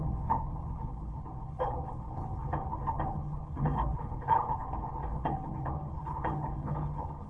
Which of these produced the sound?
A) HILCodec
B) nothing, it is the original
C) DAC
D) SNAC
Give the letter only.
A